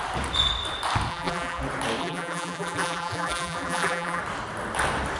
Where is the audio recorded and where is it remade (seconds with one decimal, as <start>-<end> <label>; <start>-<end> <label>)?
0.0-1.1 recorded; 1.1-1.6 remade; 1.6-2.0 recorded; 2.0-4.2 remade; 4.2-5.2 recorded

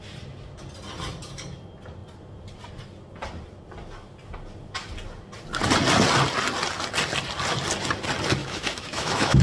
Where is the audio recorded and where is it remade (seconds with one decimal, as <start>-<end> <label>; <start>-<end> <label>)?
0.0-8.4 recorded; 8.4-9.4 remade

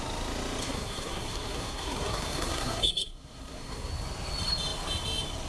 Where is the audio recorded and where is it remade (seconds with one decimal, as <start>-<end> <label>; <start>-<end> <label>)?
0.0-0.6 recorded; 0.6-3.9 remade; 3.9-5.5 recorded

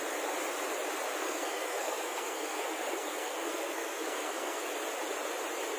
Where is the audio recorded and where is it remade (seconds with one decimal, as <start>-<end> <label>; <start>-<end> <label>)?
0.0-1.2 recorded; 1.2-4.7 remade; 4.7-5.8 recorded

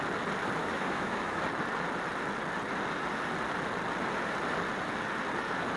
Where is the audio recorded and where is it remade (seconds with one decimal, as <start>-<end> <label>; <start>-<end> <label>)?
0.0-0.6 recorded; 0.6-1.4 remade; 1.4-5.8 recorded